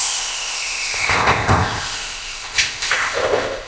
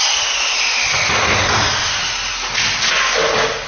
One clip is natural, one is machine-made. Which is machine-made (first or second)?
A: first